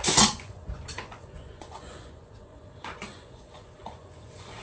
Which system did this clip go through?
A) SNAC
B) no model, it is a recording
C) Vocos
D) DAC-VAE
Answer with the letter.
C